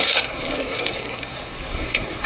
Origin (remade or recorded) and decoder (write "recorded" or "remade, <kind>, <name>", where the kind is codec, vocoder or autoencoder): remade, codec, SNAC